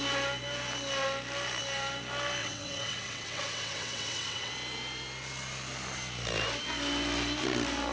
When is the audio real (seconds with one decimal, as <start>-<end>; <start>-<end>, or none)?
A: 0.0-2.4; 4.5-7.9